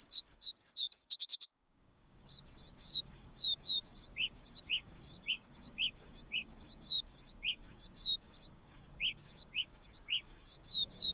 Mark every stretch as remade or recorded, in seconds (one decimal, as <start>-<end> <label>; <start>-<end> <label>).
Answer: 0.0-11.1 remade